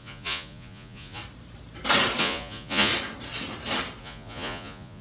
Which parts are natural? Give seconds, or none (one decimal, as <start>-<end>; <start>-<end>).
1.2-2.2; 2.9-4.0

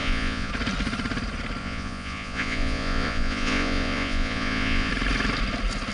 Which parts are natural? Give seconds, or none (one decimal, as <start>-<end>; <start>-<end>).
0.5-1.6; 4.9-5.9

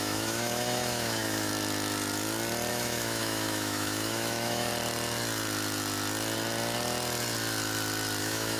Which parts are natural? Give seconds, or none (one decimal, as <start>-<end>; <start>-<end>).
1.5-2.7; 4.7-8.2

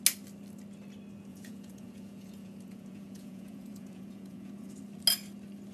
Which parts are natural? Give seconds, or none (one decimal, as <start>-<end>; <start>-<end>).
0.0-1.3; 4.7-5.7